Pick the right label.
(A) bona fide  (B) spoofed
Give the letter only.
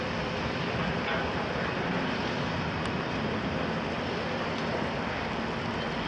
A